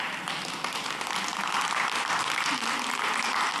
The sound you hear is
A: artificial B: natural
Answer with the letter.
B